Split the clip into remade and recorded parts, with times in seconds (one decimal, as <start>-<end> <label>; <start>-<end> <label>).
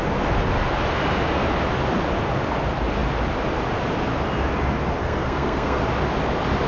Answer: 0.0-5.0 recorded; 5.0-5.8 remade; 5.8-6.7 recorded